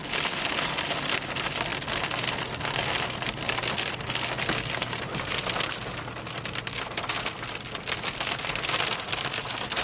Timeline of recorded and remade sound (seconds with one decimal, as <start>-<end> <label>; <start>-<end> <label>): 0.0-9.8 recorded